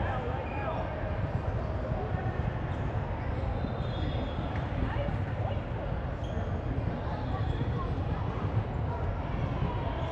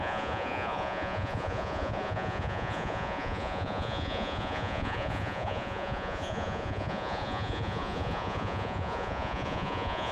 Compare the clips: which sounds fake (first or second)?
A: second